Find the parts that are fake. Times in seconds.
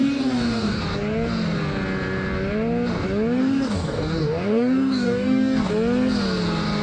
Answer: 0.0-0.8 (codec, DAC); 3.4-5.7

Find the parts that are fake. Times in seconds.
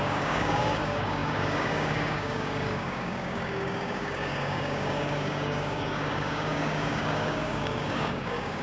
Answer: 0.0-8.6 (codec, DAC)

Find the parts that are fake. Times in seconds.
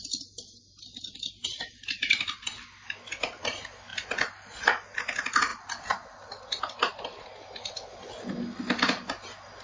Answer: none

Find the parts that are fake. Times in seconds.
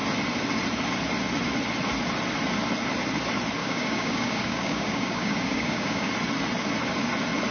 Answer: 3.6-6.1 (codec, DAC)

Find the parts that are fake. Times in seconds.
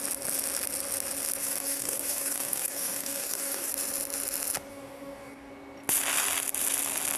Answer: 1.4-3.7 (codec, DAC); 4.7-5.5